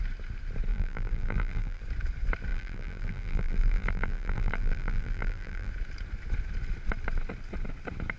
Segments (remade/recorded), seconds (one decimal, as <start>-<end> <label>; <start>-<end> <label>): 0.0-0.7 recorded; 0.7-1.8 remade; 1.8-2.5 recorded; 2.5-5.7 remade; 5.7-8.2 recorded